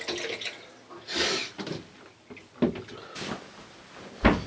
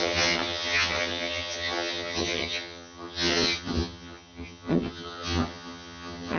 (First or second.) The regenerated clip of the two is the second